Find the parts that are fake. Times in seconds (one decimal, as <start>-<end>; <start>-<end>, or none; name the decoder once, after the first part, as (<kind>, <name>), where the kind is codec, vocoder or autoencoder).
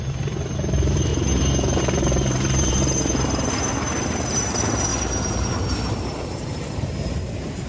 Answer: 0.0-4.9 (vocoder, BigVGAN v2); 5.9-7.7